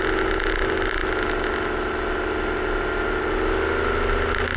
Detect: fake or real real